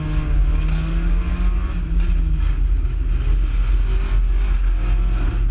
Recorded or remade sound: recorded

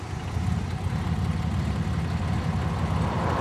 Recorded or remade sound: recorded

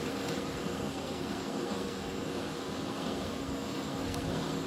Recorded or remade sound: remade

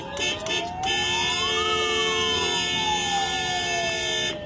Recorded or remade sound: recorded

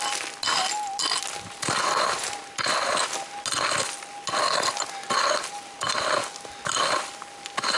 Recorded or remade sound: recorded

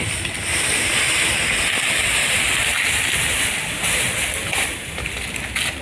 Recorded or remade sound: recorded